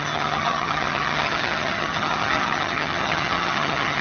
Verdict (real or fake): fake